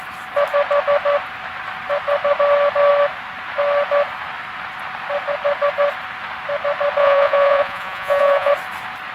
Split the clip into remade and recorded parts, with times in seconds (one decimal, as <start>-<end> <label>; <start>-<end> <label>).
0.0-7.0 recorded; 7.0-8.5 remade; 8.5-9.1 recorded